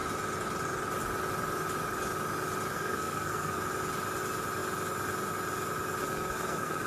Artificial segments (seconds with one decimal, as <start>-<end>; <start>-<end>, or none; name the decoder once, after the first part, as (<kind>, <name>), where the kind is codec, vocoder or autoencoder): 2.7-3.6 (codec, SNAC); 6.0-6.9